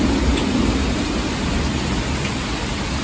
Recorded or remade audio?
recorded